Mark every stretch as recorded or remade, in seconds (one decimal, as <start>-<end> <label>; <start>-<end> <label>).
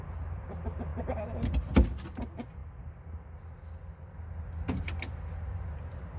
0.0-6.2 recorded